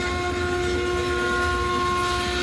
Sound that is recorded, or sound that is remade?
recorded